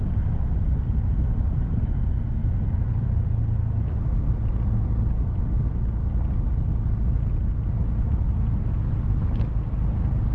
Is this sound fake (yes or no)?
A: no